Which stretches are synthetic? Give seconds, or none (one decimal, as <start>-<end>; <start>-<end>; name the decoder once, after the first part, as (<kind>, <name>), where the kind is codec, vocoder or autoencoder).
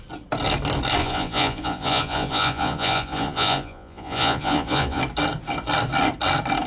1.0-5.0 (vocoder, Vocos)